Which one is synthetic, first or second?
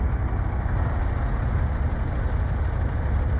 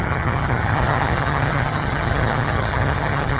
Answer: second